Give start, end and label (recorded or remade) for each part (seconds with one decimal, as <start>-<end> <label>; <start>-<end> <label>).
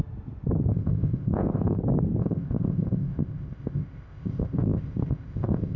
0.0-0.7 recorded; 0.7-1.8 remade; 1.8-2.2 recorded; 2.2-5.8 remade